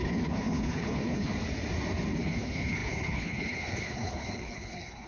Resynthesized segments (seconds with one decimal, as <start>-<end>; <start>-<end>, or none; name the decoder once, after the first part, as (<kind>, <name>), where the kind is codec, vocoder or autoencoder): 0.0-1.3 (codec, HILCodec); 2.2-5.1